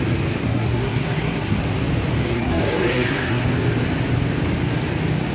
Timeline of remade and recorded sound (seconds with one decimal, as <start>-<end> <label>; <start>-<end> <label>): 0.0-0.4 recorded; 0.4-1.6 remade; 1.6-2.2 recorded; 2.2-3.5 remade; 3.5-5.3 recorded